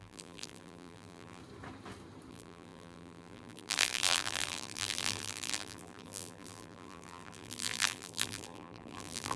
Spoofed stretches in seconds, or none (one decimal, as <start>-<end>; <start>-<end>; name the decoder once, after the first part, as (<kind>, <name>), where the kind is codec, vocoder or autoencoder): 0.0-1.4 (vocoder, BigVGAN v2); 2.3-9.4